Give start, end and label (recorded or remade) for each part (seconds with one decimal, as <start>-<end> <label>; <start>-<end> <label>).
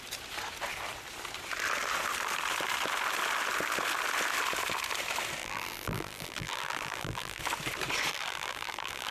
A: 0.0-5.4 recorded; 5.4-7.4 remade; 7.4-8.1 recorded; 8.1-9.1 remade